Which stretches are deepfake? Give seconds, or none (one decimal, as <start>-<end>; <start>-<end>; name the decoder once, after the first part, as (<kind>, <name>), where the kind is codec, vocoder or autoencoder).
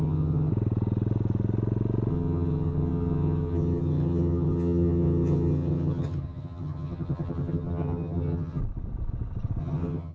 0.0-0.5 (vocoder, HiFi-GAN); 2.1-8.6; 9.6-10.1